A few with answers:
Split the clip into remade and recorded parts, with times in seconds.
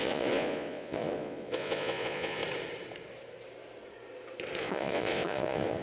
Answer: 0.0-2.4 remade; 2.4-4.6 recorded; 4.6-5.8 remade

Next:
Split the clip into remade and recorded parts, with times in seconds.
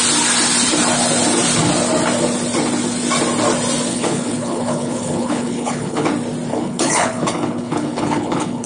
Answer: 0.0-3.9 recorded; 3.9-6.1 remade; 6.1-6.5 recorded; 6.5-8.7 remade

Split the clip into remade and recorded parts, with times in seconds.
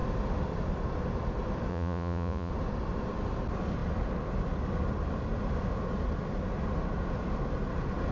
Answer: 0.0-1.7 recorded; 1.7-2.5 remade; 2.5-8.1 recorded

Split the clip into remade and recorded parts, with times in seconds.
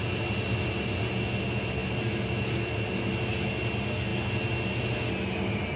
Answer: 0.0-5.8 recorded